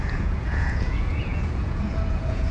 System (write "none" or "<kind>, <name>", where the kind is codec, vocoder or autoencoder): vocoder, Vocos